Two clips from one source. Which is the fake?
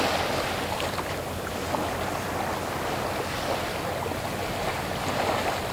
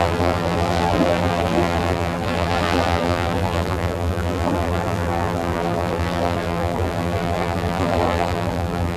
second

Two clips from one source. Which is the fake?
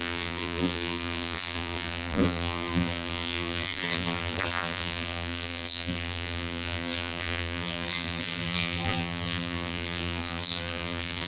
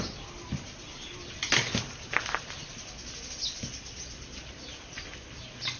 first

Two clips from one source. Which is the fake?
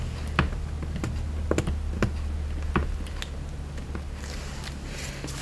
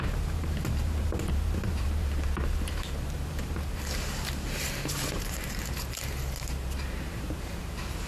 second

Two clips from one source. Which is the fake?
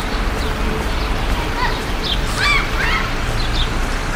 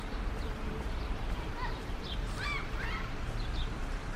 second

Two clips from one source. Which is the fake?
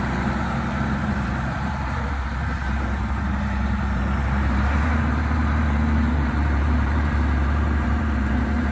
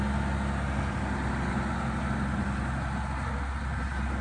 first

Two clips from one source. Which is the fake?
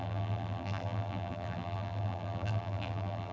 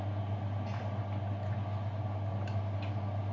first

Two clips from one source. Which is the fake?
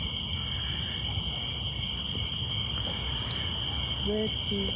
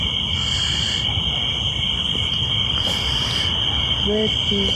second